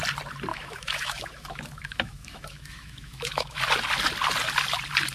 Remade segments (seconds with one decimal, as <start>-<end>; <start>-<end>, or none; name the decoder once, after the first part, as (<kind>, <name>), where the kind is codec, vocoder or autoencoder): 0.5-3.6 (autoencoder, DAC-VAE)